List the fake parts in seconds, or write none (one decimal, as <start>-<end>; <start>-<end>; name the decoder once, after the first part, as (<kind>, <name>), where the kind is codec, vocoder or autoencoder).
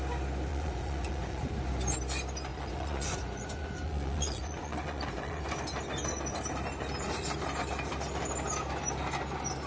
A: 0.5-1.5 (vocoder, Vocos); 2.5-5.4